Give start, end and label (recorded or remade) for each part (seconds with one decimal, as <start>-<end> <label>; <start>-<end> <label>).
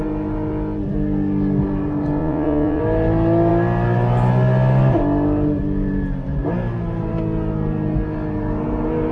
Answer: 0.0-2.2 recorded; 2.2-2.8 remade; 2.8-9.1 recorded